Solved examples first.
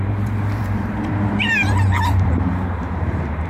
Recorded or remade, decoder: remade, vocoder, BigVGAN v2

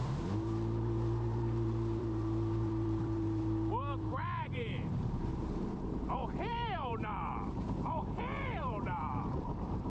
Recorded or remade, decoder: remade, vocoder, BigVGAN v2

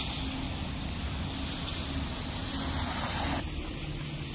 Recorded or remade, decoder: recorded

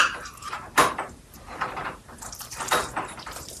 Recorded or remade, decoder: remade, vocoder, BigVGAN v2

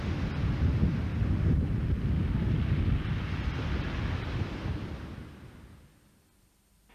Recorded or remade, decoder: recorded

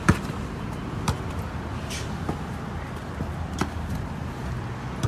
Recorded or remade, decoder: remade, vocoder, BigVGAN v2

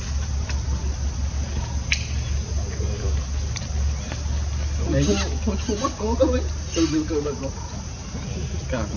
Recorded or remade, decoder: recorded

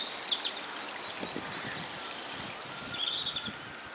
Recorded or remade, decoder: recorded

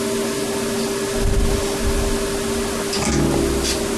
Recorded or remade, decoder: recorded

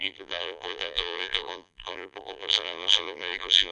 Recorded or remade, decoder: remade, vocoder, BigVGAN v2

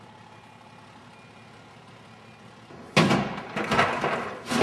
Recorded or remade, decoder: recorded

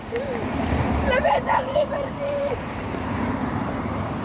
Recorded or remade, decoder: remade, vocoder, BigVGAN v2